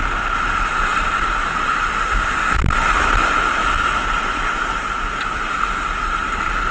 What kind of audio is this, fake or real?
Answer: real